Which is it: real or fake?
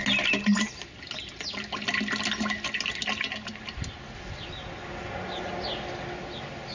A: real